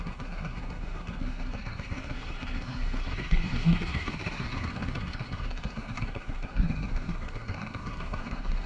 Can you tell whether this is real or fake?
fake